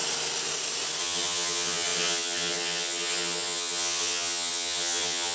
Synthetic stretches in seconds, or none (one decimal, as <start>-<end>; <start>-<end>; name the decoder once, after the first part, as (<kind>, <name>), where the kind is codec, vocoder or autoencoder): 1.0-5.3 (vocoder, HiFi-GAN)